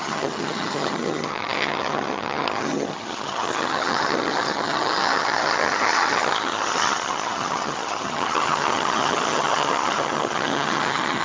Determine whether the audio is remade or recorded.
remade